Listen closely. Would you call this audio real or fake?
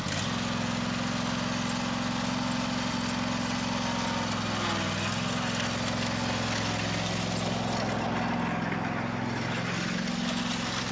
real